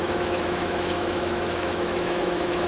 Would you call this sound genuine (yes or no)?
no